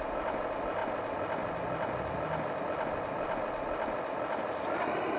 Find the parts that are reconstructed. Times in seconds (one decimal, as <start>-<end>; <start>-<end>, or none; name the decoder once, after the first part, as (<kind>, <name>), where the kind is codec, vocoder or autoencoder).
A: none